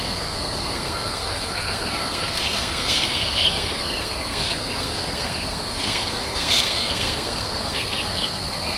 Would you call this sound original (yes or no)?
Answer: no